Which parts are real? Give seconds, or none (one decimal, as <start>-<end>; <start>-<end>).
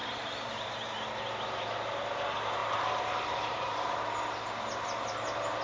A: 1.0-2.6; 4.0-5.6